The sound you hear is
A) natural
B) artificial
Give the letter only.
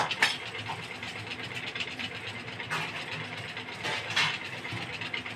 A